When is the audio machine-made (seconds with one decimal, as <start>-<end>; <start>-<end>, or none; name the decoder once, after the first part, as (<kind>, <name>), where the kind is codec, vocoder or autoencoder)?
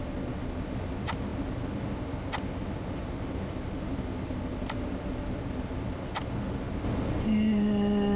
none